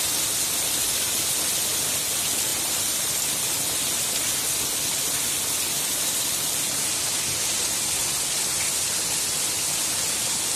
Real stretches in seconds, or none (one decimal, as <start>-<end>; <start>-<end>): 0.0-2.5; 3.3-10.6